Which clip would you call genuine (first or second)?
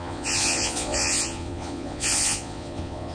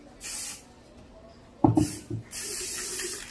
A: second